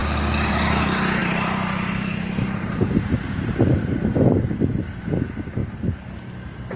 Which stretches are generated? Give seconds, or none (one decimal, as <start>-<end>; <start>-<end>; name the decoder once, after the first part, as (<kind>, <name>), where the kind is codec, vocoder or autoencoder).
1.2-4.5 (vocoder, BigVGAN v2); 5.6-6.1